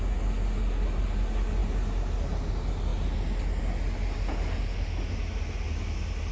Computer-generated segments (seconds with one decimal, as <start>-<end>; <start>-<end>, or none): none